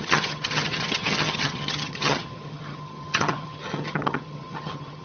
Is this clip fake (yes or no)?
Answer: yes